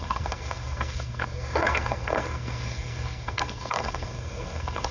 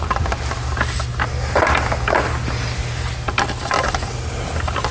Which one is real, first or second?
second